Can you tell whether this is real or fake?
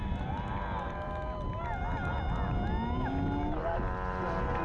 real